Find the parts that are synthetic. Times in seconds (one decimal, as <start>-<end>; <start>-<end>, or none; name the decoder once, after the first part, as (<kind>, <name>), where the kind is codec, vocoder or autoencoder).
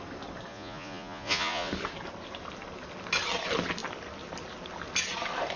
0.5-1.7 (vocoder, Vocos)